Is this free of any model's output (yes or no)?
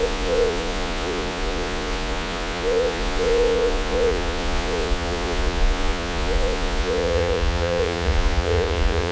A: no